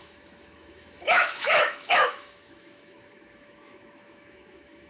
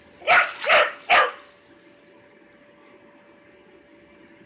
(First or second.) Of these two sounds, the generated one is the first